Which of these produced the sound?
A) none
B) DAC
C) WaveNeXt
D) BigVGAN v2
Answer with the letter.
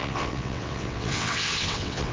C